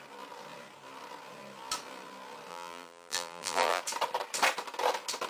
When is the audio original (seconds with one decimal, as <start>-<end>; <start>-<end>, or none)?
0.0-2.5; 3.8-5.3